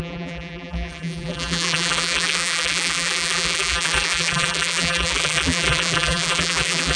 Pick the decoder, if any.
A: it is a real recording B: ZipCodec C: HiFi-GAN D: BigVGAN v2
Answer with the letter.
D